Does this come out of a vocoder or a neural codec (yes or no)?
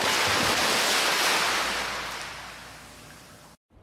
no